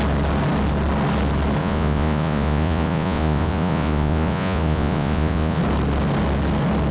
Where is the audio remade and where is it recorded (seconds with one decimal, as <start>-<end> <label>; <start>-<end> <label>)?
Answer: 0.0-1.6 recorded; 1.6-5.6 remade; 5.6-6.9 recorded